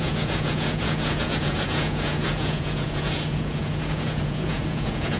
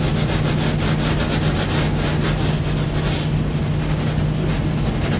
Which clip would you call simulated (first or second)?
first